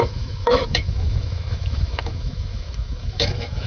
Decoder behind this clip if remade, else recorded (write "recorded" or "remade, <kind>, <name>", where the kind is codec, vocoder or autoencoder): remade, autoencoder, DAC-VAE